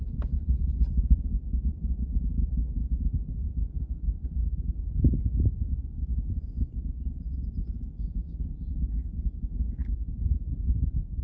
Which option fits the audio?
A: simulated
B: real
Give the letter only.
B